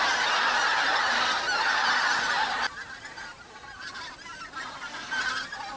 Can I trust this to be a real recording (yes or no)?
yes